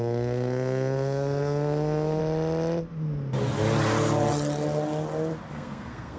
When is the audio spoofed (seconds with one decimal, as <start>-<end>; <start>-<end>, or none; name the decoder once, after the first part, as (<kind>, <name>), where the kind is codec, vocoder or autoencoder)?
0.0-2.2 (codec, SNAC); 5.5-6.2